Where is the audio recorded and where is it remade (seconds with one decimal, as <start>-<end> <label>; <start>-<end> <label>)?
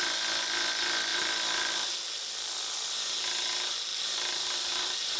0.0-1.1 recorded; 1.1-2.6 remade; 2.6-3.9 recorded; 3.9-5.2 remade